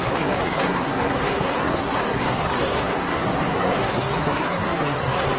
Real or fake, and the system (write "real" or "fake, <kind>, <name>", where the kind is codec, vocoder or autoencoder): fake, codec, SNAC